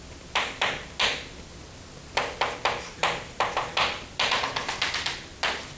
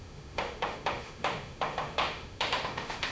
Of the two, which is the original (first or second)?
first